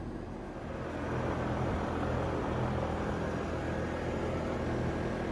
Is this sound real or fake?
real